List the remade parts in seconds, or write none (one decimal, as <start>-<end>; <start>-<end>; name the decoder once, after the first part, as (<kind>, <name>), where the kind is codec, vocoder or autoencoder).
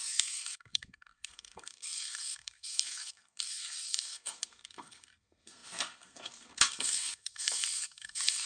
0.0-8.5 (codec, SNAC)